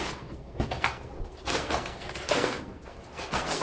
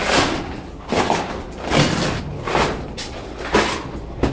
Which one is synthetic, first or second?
first